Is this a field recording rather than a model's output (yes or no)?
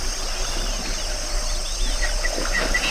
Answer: yes